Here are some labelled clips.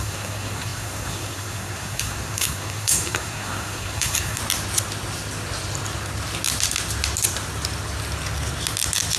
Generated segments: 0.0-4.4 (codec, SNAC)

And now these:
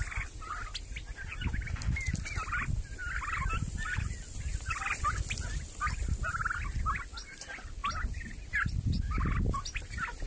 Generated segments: none

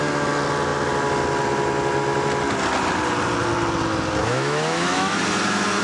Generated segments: 4.2-5.2 (autoencoder, DAC-VAE)